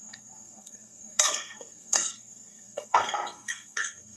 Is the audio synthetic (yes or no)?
yes